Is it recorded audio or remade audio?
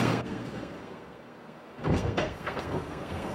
remade